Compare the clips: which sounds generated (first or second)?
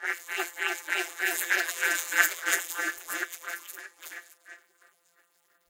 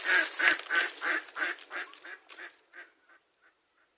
first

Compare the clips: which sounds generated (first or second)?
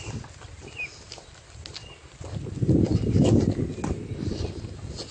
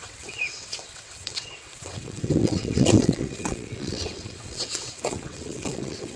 second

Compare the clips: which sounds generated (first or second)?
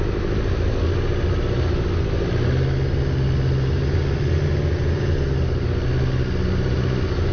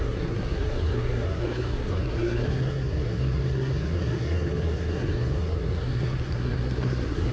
second